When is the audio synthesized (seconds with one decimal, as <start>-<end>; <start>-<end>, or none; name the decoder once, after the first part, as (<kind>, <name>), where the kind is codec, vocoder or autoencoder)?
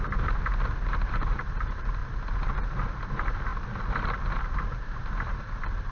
0.0-2.0 (vocoder, BigVGAN v2); 2.6-3.5; 4.4-5.9